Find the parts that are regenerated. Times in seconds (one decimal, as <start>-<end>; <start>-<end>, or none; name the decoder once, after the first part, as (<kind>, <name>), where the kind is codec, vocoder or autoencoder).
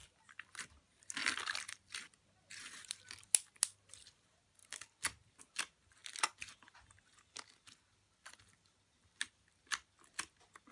0.0-0.7 (vocoder, BigVGAN v2); 1.2-2.0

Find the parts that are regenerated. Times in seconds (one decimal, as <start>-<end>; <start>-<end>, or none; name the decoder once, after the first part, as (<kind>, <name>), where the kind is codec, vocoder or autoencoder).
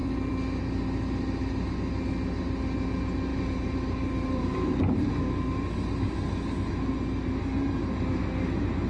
3.3-5.1 (vocoder, BigVGAN v2); 7.5-8.1